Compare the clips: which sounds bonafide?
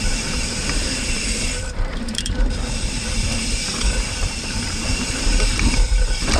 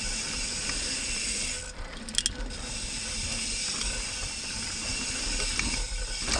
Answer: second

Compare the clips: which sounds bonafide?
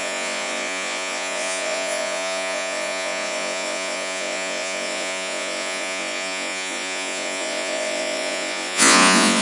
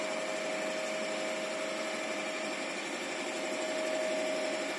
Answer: second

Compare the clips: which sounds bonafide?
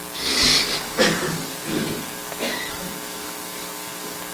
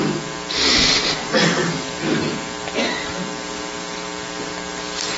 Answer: second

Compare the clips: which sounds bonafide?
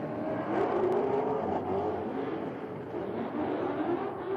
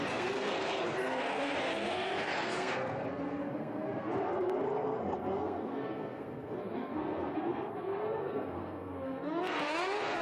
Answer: first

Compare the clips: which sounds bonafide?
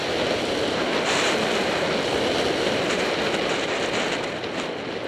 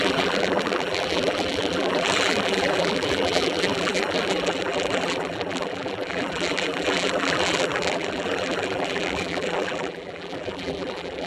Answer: first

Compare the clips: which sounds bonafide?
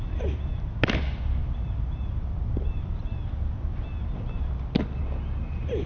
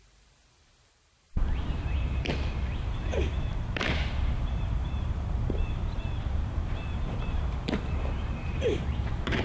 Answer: first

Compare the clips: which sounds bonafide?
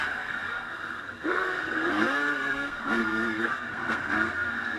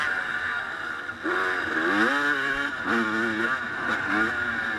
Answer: second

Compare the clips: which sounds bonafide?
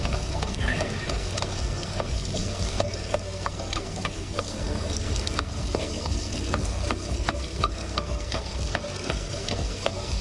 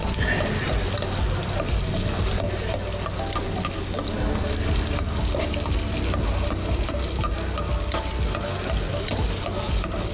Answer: second